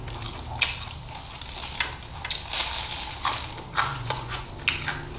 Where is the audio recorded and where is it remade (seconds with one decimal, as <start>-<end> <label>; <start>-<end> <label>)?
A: 0.0-3.9 recorded; 3.9-4.5 remade; 4.5-5.2 recorded